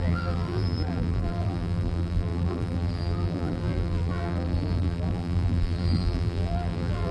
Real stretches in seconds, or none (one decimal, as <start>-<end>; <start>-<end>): none